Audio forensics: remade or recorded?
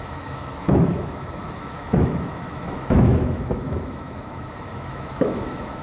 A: remade